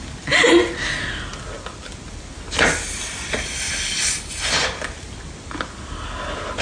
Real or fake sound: real